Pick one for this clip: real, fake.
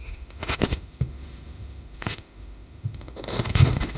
fake